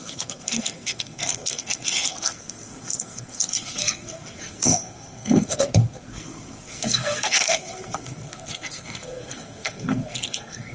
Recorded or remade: remade